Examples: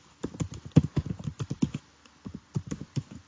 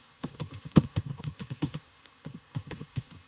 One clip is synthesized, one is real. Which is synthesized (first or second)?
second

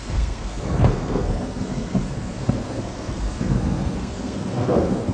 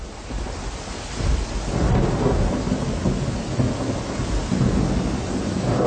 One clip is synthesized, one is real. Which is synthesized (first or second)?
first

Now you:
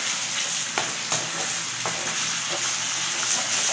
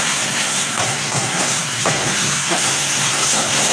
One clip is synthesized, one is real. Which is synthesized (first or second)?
second